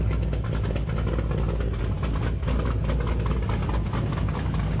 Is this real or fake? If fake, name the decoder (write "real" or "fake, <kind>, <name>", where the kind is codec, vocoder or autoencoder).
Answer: real